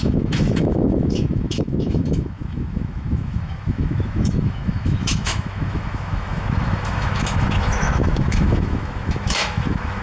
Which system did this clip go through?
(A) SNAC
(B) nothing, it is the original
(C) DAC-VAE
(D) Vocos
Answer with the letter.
C